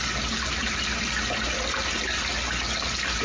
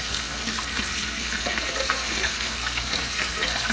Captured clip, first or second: first